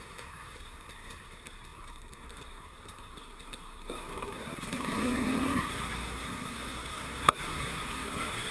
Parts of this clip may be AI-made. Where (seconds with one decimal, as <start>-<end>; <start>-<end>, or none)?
0.0-8.5